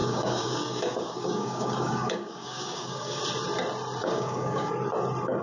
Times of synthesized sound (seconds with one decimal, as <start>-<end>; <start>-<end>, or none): 0.0-3.2; 4.0-4.7